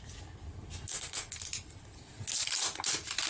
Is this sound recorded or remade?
recorded